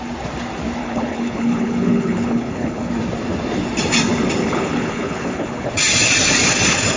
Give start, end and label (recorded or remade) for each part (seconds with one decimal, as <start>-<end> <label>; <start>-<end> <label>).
0.0-0.8 recorded; 0.8-2.9 remade; 2.9-4.4 recorded; 4.4-5.7 remade; 5.7-7.0 recorded

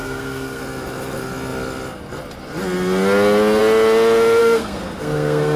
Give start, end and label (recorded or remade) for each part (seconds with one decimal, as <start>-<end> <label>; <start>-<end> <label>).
0.0-0.6 remade; 0.6-4.4 recorded; 4.4-5.6 remade

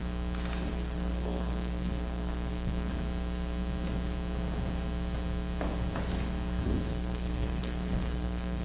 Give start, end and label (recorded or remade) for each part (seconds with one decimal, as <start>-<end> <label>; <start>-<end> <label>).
0.0-0.7 recorded; 0.7-2.9 remade; 2.9-6.9 recorded; 6.9-8.6 remade